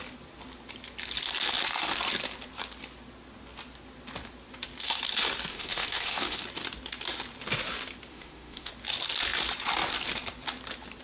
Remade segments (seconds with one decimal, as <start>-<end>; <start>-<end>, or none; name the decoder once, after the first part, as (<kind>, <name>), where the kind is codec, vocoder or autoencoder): 5.5-6.4 (autoencoder, DAC-VAE); 8.1-8.7